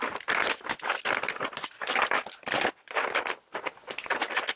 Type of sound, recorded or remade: recorded